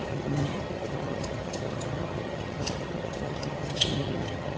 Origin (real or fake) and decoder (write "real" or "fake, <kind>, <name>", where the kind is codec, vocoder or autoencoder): fake, vocoder, HiFi-GAN